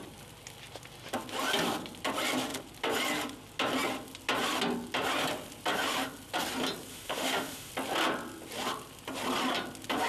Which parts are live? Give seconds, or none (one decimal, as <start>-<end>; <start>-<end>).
0.0-6.9; 7.7-10.1